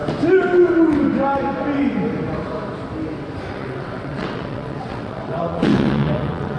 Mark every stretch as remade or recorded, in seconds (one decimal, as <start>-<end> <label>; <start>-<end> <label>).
0.0-3.5 recorded; 3.5-6.6 remade